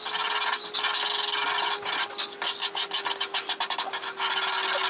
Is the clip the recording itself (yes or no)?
yes